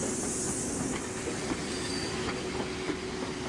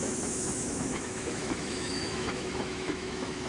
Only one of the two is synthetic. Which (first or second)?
second